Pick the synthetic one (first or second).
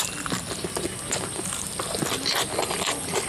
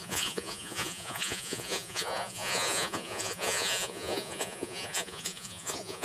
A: second